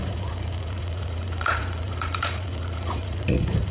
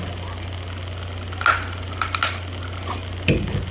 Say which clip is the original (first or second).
second